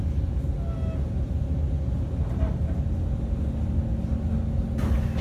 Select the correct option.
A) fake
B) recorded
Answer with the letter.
B